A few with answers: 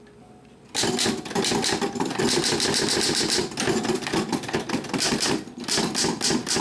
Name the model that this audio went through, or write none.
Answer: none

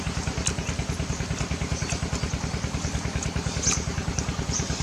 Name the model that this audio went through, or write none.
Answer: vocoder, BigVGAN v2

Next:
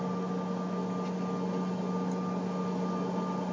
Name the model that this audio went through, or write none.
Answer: none